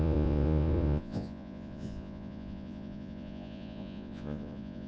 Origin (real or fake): fake